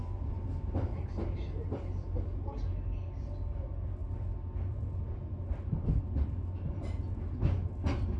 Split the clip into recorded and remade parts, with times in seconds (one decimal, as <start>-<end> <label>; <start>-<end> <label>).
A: 0.0-8.2 recorded